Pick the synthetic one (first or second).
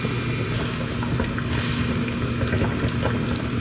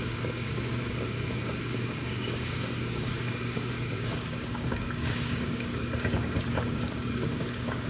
second